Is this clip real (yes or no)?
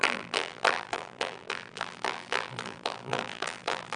no